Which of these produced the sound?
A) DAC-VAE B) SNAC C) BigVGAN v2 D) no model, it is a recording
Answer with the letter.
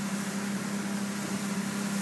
D